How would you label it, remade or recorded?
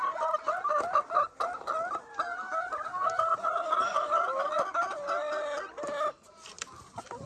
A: recorded